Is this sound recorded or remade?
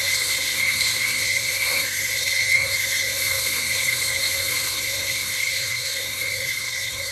remade